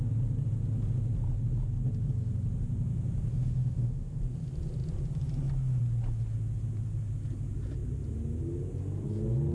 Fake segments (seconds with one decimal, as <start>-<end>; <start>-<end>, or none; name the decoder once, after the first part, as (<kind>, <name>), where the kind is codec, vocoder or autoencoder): 3.3-4.2 (autoencoder, DAC-VAE)